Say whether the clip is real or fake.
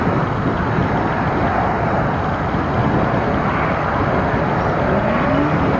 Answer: real